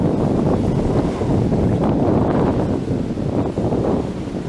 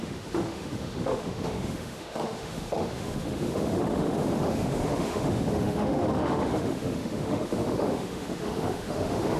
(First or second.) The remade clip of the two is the second